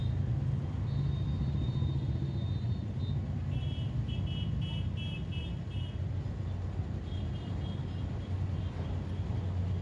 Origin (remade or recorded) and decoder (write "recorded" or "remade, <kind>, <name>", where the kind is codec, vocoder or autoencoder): recorded